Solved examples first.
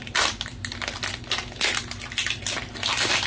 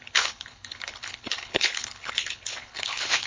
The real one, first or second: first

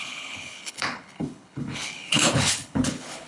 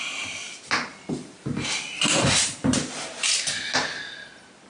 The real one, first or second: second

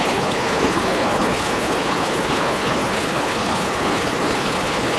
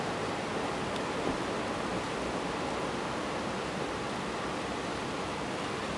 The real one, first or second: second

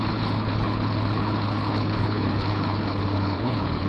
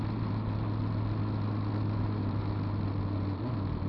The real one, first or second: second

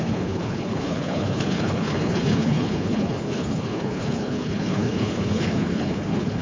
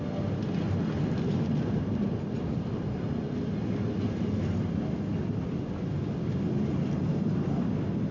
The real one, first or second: second